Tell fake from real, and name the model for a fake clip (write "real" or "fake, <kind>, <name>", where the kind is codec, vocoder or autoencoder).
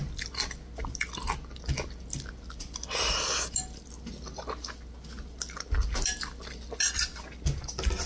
real